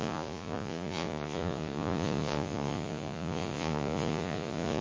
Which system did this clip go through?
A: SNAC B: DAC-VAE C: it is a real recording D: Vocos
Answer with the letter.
D